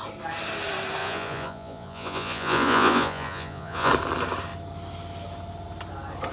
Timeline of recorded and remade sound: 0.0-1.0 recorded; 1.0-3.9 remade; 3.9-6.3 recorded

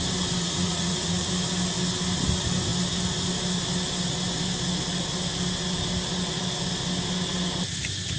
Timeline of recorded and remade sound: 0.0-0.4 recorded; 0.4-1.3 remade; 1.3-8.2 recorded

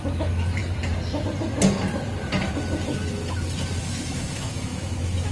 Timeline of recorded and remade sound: 0.0-0.6 remade; 0.6-3.8 recorded; 3.8-5.3 remade

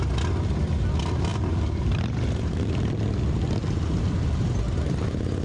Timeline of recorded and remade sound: 0.0-1.3 recorded; 1.3-3.0 remade; 3.0-5.4 recorded